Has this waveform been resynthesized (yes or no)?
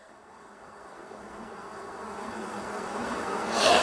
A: yes